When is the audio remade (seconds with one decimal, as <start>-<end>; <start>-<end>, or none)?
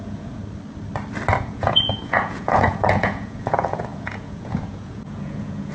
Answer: 0.0-0.4; 1.4-5.7